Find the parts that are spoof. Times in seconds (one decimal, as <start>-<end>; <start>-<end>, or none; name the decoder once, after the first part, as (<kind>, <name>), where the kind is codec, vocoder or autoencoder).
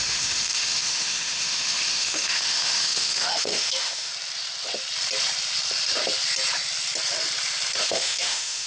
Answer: 0.0-4.1 (autoencoder, DAC-VAE); 7.8-8.7